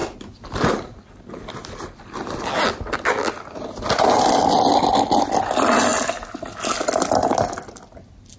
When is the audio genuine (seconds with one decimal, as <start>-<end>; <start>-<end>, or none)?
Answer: 0.0-8.4